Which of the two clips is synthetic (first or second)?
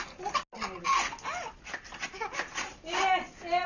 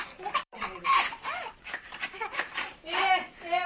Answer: second